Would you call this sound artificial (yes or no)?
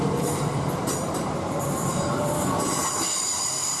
yes